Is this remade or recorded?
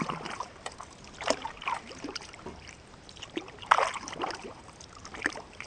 remade